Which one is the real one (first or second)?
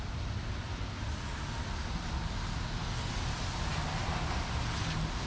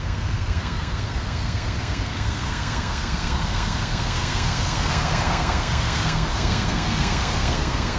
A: first